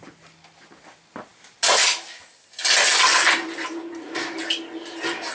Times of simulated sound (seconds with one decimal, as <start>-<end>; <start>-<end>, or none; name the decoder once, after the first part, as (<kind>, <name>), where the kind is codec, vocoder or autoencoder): none